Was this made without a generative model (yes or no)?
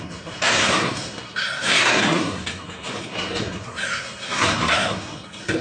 no